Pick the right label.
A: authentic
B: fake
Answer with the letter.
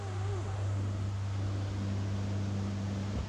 A